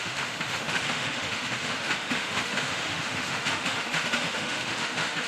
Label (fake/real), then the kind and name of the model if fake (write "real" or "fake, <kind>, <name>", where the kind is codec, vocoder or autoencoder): fake, autoencoder, DAC-VAE